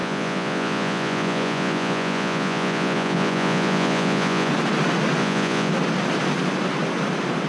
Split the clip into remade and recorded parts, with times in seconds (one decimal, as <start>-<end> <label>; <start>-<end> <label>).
0.0-4.5 remade; 4.5-5.2 recorded; 5.2-5.7 remade; 5.7-7.5 recorded